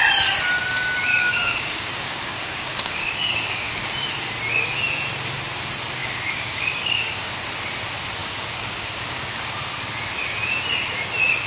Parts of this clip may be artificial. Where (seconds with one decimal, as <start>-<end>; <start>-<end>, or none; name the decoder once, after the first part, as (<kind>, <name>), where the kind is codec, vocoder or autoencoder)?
1.1-3.9 (codec, DAC); 6.0-7.3; 8.2-9.5